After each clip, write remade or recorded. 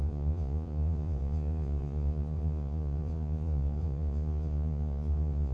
remade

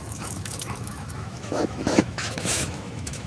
remade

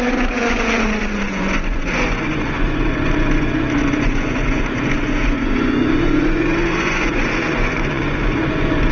remade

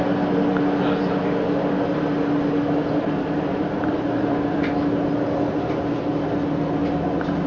recorded